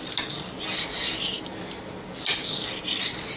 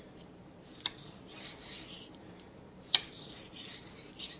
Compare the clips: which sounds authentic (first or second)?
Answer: first